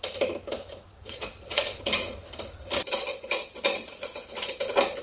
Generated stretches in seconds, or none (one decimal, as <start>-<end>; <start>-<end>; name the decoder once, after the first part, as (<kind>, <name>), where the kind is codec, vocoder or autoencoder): 0.9-1.8 (vocoder, Vocos); 3.1-4.5